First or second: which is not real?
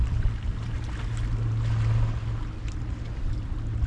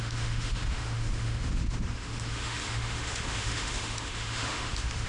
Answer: second